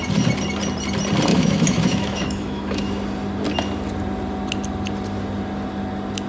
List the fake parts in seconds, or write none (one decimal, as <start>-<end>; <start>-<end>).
1.3-2.8